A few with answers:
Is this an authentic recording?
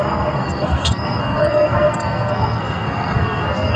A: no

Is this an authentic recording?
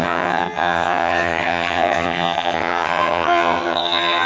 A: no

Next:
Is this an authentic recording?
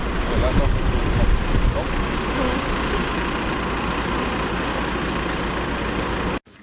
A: yes